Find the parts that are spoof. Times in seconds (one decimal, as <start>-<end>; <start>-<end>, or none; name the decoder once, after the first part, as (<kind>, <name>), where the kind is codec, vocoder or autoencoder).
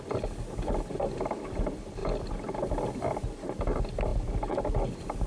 none